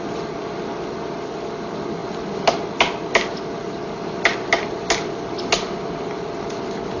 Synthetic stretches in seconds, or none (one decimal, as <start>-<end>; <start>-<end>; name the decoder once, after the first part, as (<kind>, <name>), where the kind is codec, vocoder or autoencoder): none